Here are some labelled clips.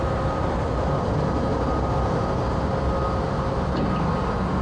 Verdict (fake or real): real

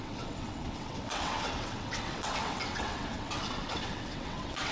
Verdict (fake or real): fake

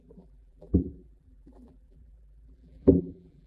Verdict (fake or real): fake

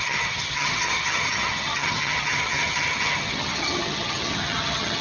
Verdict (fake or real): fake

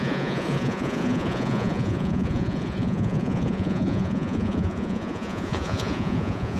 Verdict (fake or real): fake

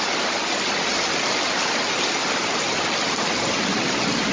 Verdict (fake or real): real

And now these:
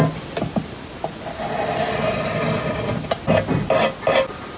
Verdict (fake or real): real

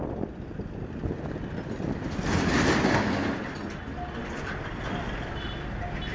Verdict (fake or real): real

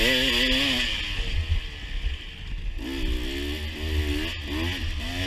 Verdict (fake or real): real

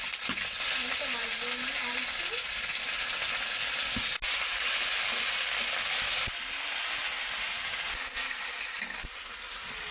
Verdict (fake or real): real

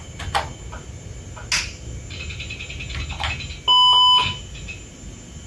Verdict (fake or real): real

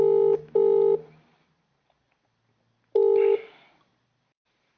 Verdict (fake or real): real